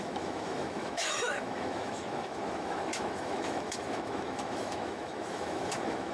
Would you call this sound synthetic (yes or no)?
yes